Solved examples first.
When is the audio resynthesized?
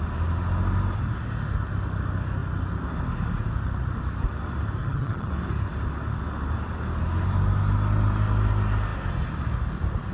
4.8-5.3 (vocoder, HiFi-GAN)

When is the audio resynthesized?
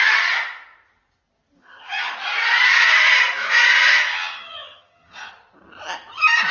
1.6-2.1 (vocoder, HiFi-GAN); 3.9-5.3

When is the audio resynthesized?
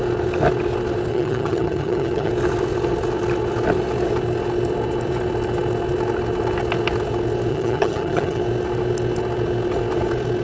1.1-2.3 (vocoder, HiFi-GAN); 7.5-8.4